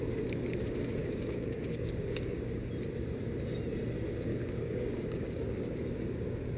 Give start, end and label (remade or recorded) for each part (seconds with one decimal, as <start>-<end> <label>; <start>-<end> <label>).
0.0-1.0 recorded; 1.0-2.7 remade; 2.7-4.3 recorded; 4.3-6.6 remade